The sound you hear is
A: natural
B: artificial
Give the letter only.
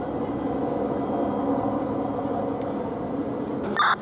A